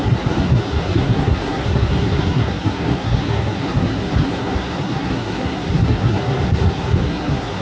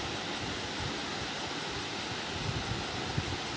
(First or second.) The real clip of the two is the second